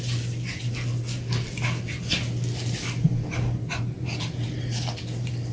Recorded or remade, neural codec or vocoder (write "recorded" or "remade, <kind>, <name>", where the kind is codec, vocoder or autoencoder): recorded